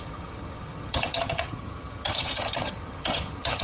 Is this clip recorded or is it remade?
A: remade